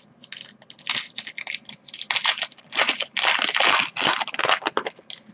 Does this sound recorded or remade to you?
recorded